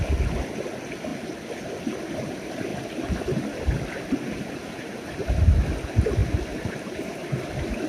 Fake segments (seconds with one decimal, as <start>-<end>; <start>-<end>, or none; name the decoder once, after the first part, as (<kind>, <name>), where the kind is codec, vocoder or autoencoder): 6.2-7.9 (vocoder, BigVGAN v2)